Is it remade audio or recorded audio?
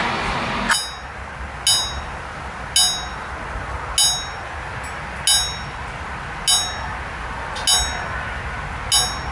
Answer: recorded